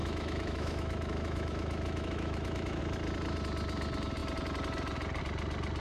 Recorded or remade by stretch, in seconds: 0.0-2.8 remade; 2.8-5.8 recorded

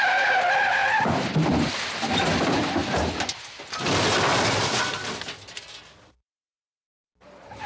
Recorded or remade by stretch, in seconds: 0.0-7.7 recorded

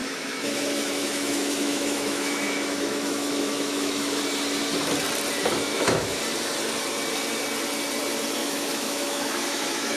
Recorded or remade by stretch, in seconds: 0.0-4.2 remade; 4.2-5.7 recorded; 5.7-6.2 remade; 6.2-8.4 recorded; 8.4-10.0 remade

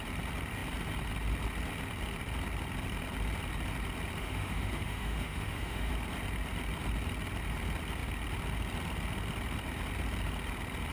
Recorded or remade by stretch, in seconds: 0.0-4.2 recorded; 4.2-5.9 remade; 5.9-10.9 recorded

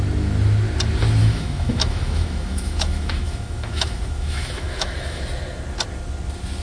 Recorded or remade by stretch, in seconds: 0.0-1.2 recorded; 1.2-5.2 remade; 5.2-6.6 recorded

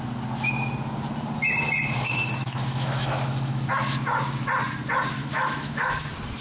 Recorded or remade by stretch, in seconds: 0.0-2.4 recorded; 2.4-3.7 remade; 3.7-5.2 recorded; 5.2-6.0 remade; 6.0-6.4 recorded